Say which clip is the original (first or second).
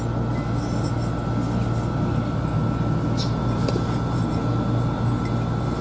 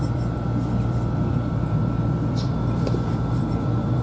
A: first